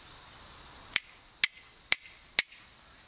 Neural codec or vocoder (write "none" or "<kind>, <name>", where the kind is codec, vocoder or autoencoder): none